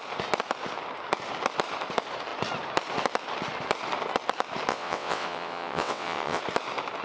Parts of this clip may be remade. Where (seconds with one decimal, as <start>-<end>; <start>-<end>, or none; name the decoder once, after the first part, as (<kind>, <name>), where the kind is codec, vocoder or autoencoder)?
4.7-6.4 (vocoder, WaveNeXt)